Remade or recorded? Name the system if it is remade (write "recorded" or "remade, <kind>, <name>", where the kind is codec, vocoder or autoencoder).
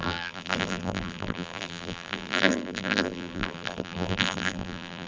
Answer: remade, vocoder, BigVGAN v2